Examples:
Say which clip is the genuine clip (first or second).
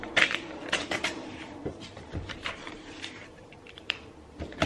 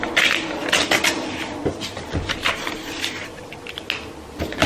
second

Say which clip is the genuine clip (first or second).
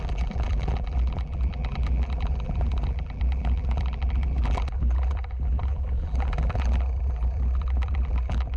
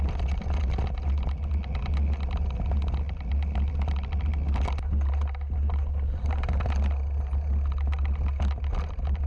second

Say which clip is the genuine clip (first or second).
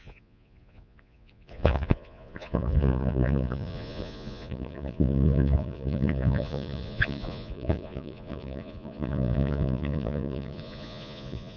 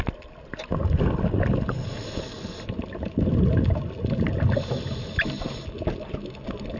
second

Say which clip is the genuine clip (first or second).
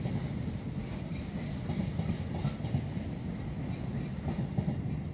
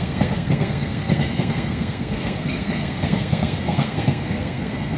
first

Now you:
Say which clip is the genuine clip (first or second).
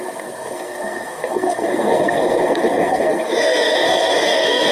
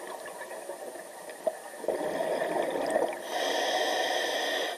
second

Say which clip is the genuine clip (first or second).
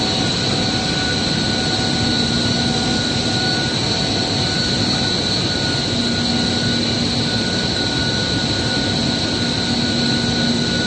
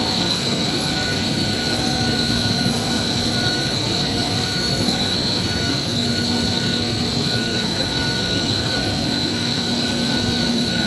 first